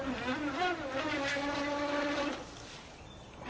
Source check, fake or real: real